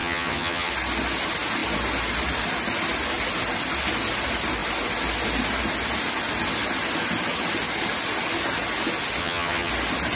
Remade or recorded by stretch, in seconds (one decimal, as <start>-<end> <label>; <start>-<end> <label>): 0.0-0.7 remade; 0.7-9.2 recorded; 9.2-9.7 remade; 9.7-10.2 recorded

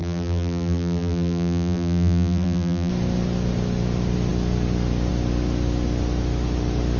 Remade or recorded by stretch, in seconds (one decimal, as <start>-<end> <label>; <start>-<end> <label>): 0.0-2.9 remade; 2.9-7.0 recorded

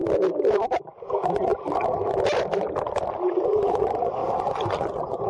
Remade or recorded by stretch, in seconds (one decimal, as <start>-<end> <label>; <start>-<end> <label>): 0.0-0.8 recorded; 0.8-1.5 remade; 1.5-3.2 recorded; 3.2-4.2 remade; 4.2-4.7 recorded; 4.7-5.3 remade

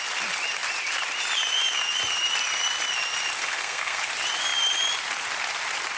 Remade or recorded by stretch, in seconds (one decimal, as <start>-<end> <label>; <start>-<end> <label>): 0.0-3.4 recorded; 3.4-4.0 remade; 4.0-6.0 recorded